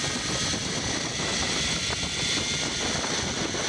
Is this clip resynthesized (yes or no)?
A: no